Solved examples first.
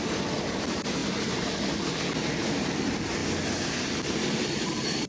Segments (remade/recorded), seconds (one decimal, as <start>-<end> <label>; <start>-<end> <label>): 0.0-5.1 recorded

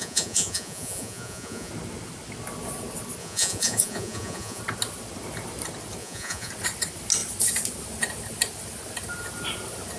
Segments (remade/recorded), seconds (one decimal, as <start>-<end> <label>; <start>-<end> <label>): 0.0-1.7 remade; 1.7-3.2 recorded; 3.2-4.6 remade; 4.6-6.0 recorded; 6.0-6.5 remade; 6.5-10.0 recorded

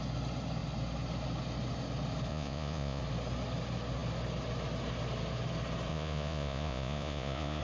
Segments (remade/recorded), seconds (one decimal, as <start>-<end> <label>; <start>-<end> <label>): 0.0-2.3 recorded; 2.3-3.0 remade; 3.0-5.9 recorded; 5.9-7.6 remade

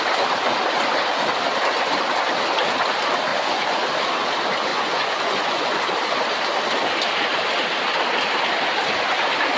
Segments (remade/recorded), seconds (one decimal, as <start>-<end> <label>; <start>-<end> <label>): 0.0-3.3 recorded; 3.3-3.8 remade; 3.8-4.7 recorded; 4.7-5.8 remade; 5.8-9.6 recorded

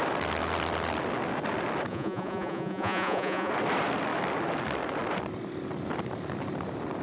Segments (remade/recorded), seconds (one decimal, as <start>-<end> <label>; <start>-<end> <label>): 0.0-1.9 recorded; 1.9-3.5 remade; 3.5-7.0 recorded

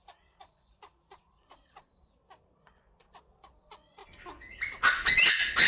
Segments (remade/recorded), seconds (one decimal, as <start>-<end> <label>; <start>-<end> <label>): 0.0-4.0 remade; 4.0-5.7 recorded